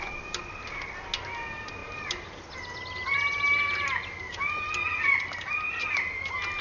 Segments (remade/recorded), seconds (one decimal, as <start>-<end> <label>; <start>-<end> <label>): 0.0-6.6 recorded